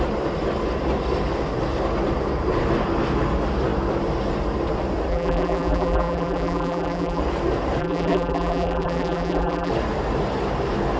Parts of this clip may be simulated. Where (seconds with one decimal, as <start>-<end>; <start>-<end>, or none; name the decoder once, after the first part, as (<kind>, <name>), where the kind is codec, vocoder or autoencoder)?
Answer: 5.1-7.2 (vocoder, BigVGAN v2); 7.8-9.7